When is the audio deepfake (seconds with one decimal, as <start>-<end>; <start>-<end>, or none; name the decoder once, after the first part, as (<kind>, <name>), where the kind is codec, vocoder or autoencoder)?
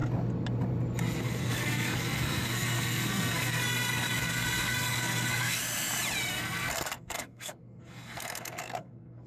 1.2-5.6 (codec, SNAC); 6.3-9.3